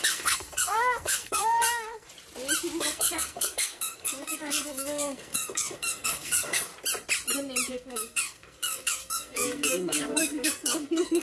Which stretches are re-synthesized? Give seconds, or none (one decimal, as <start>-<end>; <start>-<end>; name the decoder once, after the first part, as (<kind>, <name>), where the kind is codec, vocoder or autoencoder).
0.0-2.1 (codec, SNAC); 2.8-6.7; 7.7-11.2